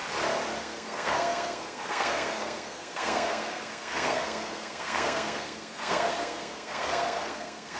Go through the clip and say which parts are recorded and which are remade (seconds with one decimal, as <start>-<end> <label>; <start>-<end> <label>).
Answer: 0.0-0.6 recorded; 0.6-7.8 remade